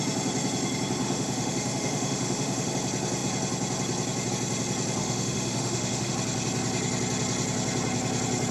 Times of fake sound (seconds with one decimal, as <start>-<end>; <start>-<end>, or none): 1.0-2.7; 5.0-6.1

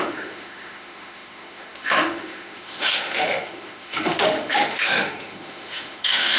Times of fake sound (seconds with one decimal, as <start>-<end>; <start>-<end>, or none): 0.0-6.4

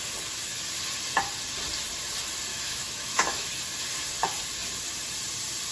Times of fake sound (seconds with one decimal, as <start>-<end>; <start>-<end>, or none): 2.5-3.5